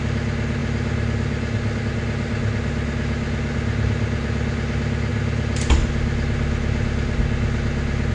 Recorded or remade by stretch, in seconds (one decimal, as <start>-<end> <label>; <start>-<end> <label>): 0.0-8.1 recorded